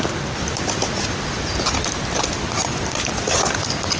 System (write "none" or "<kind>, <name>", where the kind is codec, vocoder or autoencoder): none